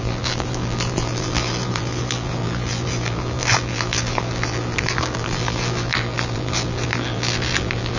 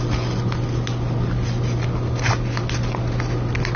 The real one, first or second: second